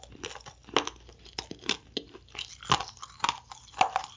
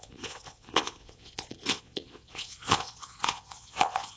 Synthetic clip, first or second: second